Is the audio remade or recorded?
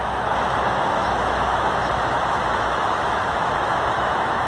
remade